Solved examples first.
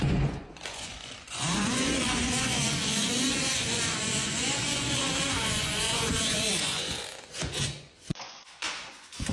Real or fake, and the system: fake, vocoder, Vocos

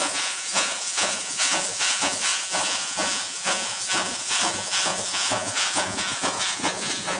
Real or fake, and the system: fake, vocoder, Vocos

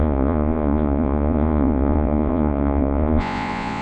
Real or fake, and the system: fake, vocoder, Vocos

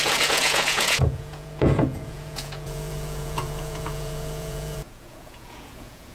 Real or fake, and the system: fake, vocoder, Vocos